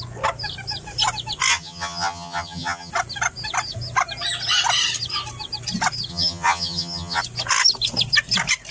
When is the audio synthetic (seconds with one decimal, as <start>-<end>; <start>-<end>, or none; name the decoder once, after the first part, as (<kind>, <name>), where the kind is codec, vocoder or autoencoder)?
1.5-2.9 (vocoder, HiFi-GAN); 6.1-7.2